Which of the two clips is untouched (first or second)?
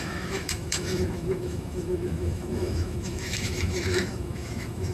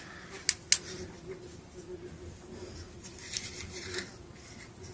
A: second